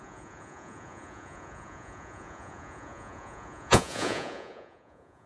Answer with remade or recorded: remade